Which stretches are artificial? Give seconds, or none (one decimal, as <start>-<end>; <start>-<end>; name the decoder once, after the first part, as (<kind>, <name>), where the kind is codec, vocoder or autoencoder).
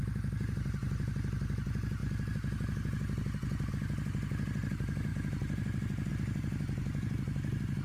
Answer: none